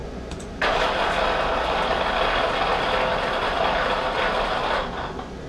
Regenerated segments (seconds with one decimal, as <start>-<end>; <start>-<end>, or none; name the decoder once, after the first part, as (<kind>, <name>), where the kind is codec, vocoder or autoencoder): 0.0-0.6 (vocoder, Vocos)